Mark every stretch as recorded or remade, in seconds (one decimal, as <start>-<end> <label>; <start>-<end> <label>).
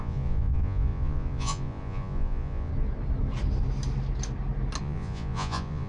0.0-2.7 remade; 2.7-4.8 recorded; 4.8-5.9 remade